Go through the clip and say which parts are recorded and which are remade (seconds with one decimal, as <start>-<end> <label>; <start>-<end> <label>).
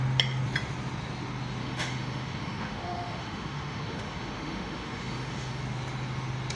0.0-1.6 recorded; 1.6-5.6 remade; 5.6-6.6 recorded